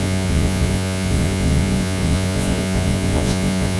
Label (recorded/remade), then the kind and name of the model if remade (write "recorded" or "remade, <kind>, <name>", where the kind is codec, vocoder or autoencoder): remade, vocoder, Vocos